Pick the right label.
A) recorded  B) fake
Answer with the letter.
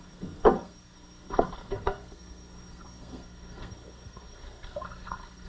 B